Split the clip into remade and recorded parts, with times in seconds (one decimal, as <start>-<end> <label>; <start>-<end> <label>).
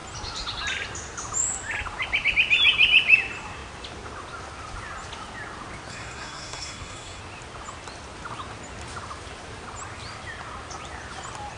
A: 0.0-5.9 recorded; 5.9-7.2 remade; 7.2-11.6 recorded